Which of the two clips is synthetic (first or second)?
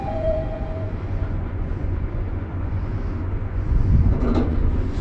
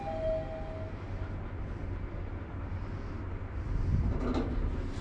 first